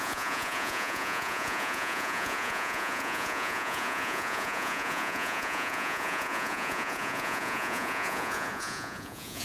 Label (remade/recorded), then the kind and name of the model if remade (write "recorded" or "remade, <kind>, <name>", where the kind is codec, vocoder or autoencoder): remade, vocoder, Vocos